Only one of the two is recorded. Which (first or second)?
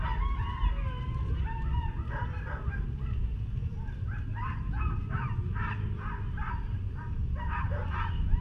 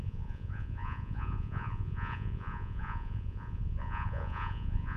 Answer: first